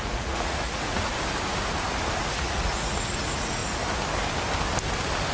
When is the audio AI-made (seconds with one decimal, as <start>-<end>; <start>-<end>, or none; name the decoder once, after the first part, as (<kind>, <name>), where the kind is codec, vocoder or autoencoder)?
0.0-1.1 (vocoder, Vocos); 2.2-3.6